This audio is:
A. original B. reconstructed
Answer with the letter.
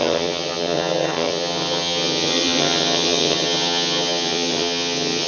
B